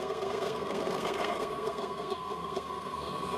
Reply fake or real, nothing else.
fake